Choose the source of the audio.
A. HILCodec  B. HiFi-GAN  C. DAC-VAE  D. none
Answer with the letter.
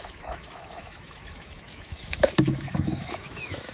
C